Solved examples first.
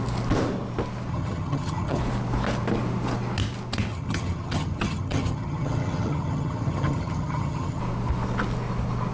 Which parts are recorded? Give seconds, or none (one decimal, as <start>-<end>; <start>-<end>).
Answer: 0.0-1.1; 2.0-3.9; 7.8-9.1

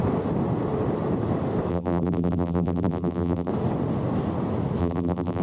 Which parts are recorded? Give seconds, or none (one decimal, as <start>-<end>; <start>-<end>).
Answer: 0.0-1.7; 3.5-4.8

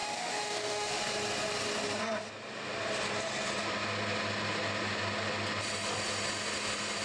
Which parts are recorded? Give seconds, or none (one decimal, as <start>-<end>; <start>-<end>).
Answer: 1.0-7.0

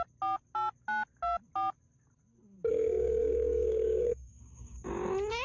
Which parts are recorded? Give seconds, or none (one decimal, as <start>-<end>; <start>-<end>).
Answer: 0.0-2.7; 4.4-5.4

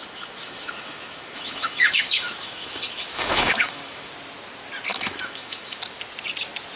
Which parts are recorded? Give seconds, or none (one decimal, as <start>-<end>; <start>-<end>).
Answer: 4.1-4.9; 5.8-6.8

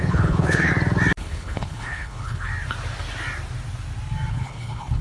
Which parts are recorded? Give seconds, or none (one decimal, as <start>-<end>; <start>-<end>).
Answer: 0.7-1.2; 2.5-4.3

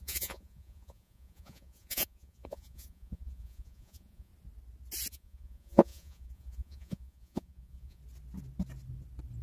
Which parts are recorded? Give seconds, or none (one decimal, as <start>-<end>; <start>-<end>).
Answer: 4.3-5.1; 8.0-9.4